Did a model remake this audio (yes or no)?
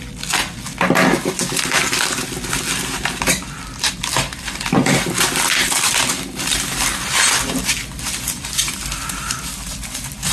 yes